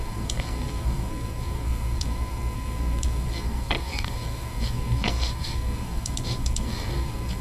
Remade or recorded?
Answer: remade